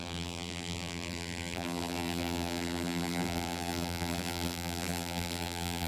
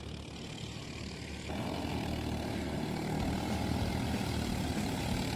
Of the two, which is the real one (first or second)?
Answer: second